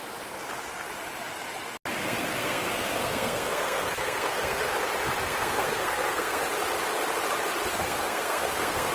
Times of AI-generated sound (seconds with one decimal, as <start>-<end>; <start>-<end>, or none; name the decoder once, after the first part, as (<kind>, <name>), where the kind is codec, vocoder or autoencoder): 2.0-4.7 (codec, SNAC); 5.2-6.4; 7.7-8.9